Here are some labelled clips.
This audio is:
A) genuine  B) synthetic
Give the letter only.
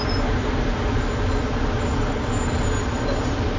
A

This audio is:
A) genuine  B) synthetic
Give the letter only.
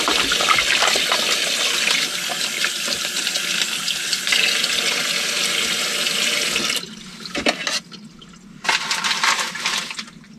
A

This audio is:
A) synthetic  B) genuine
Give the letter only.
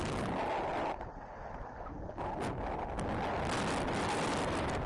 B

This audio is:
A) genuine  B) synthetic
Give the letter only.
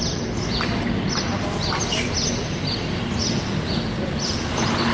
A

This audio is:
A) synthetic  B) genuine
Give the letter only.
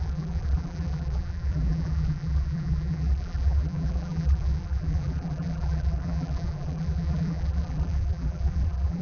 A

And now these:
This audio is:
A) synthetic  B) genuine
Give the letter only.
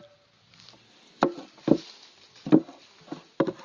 B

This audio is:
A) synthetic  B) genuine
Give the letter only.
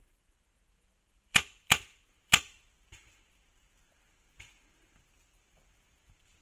A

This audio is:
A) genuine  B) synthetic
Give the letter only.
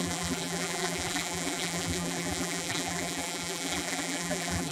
B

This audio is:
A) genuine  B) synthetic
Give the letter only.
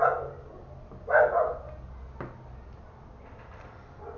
A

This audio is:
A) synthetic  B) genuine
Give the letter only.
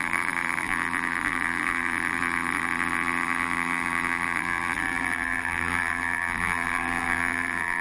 A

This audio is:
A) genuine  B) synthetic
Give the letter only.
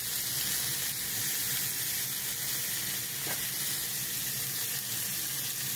A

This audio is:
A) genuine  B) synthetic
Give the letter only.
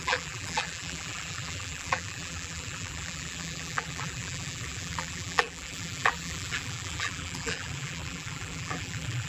B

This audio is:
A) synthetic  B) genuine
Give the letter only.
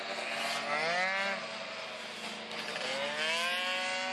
B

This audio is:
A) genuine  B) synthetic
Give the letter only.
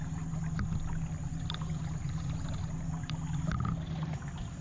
A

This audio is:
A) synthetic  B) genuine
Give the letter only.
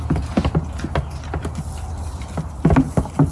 B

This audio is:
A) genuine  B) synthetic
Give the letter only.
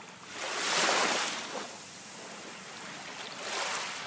A